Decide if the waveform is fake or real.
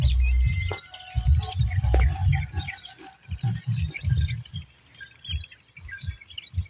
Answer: real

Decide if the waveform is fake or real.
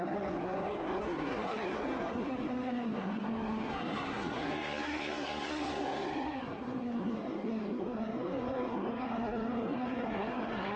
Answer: fake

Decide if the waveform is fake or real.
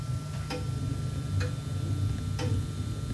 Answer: real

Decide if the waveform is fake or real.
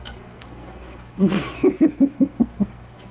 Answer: fake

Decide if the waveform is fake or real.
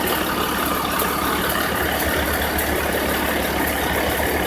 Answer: real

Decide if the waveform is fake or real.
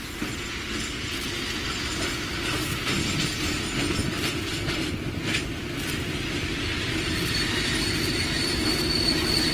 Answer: real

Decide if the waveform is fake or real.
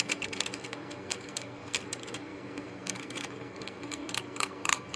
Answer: fake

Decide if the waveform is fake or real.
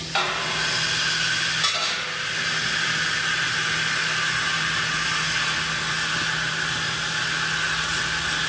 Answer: real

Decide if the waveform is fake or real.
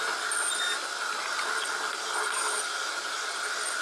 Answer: real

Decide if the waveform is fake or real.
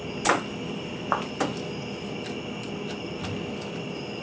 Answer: real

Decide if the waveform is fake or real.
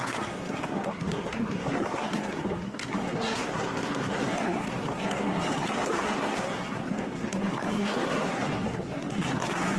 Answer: fake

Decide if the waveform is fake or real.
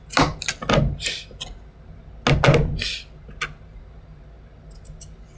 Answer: real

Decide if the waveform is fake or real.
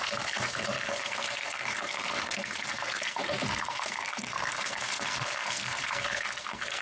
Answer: fake